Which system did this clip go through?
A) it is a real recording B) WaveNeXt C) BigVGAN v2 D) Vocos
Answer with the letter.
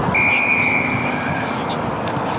A